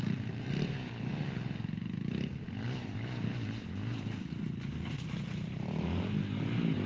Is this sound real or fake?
real